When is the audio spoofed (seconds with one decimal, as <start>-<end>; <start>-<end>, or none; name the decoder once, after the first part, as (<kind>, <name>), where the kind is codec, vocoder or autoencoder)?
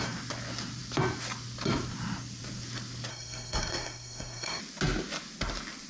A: 3.1-4.6 (codec, SNAC)